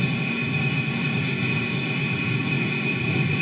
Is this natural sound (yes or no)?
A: no